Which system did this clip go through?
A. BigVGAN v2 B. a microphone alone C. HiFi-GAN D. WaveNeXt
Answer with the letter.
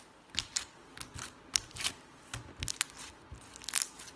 B